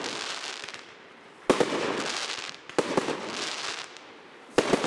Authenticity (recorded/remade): recorded